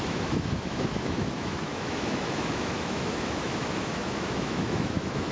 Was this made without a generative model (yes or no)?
no